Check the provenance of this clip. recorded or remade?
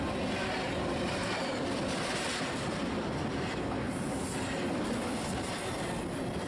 recorded